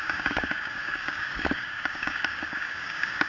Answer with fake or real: fake